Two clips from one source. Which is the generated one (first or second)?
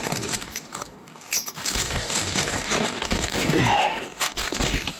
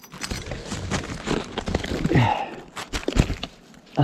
first